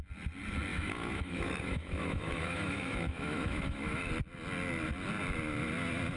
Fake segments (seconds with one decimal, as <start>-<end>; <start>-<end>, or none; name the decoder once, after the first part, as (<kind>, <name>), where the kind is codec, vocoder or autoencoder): 0.7-4.1 (autoencoder, DAC-VAE)